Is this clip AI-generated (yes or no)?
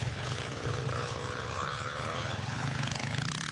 yes